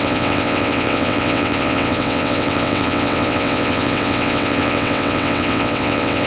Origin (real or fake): fake